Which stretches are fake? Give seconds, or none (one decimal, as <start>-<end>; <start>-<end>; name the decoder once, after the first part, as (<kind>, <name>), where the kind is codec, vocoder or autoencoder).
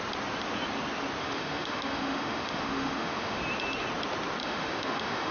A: 1.2-3.4 (autoencoder, DAC-VAE); 4.4-5.3